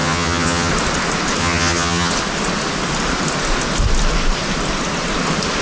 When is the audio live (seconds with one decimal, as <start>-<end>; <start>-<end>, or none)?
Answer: 0.7-1.4; 2.1-5.6